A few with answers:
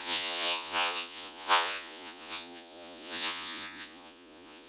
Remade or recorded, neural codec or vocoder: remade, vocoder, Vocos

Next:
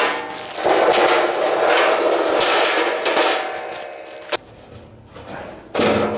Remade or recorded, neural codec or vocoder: recorded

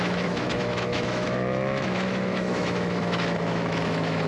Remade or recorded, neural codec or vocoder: remade, autoencoder, DAC-VAE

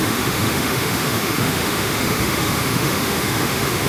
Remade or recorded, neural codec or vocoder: remade, autoencoder, DAC-VAE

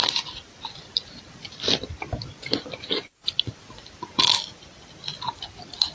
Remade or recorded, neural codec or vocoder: recorded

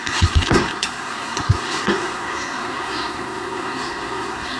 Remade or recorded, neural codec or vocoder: remade, codec, SNAC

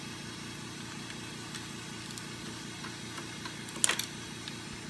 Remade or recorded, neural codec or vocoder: recorded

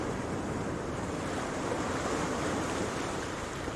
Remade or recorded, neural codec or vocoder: remade, vocoder, BigVGAN v2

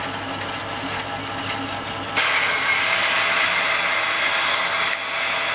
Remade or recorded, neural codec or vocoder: recorded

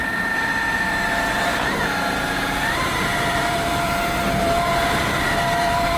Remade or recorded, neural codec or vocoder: remade, vocoder, BigVGAN v2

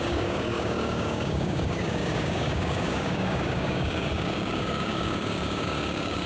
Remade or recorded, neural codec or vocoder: remade, codec, DAC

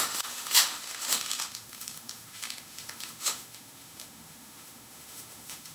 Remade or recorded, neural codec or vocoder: remade, autoencoder, DAC-VAE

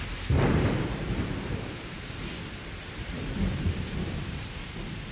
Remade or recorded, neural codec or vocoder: recorded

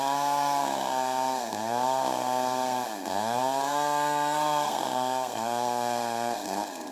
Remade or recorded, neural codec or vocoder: remade, codec, SNAC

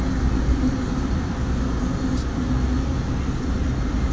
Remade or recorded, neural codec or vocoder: recorded